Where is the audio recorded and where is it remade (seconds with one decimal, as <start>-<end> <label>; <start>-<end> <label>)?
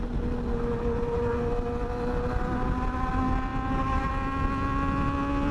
0.0-5.5 recorded